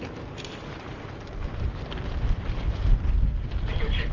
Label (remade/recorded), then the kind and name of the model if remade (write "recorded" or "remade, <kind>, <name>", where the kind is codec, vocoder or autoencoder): remade, vocoder, BigVGAN v2